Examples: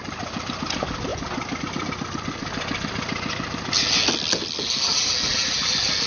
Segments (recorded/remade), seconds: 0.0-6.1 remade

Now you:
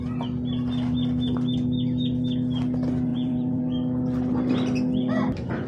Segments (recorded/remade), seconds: 0.0-3.1 recorded; 3.1-3.6 remade; 3.6-5.7 recorded